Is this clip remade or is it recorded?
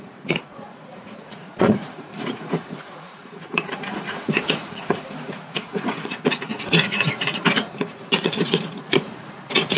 remade